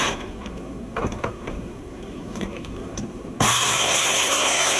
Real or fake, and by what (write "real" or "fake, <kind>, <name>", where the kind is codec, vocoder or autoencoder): fake, codec, SNAC